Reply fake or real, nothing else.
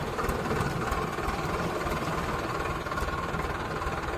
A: fake